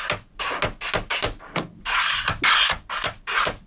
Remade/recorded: recorded